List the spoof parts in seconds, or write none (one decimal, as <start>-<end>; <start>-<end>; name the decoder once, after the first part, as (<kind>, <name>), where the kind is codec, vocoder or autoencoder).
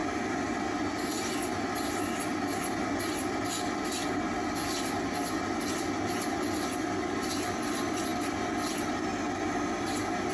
none